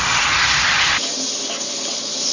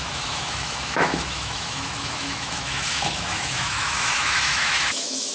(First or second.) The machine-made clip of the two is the second